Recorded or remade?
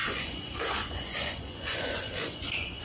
remade